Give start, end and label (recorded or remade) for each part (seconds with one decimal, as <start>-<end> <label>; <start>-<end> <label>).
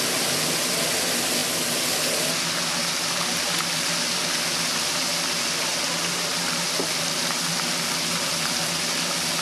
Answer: 0.0-9.4 recorded